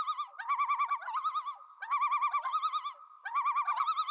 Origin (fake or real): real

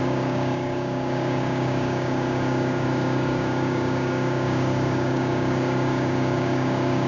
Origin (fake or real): fake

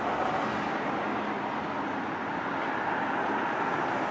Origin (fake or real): real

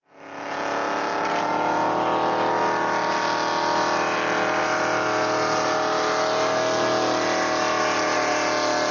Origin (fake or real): real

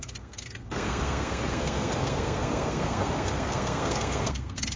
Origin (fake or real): fake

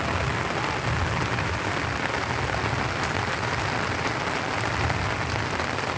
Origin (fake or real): real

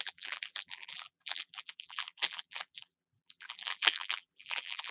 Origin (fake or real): fake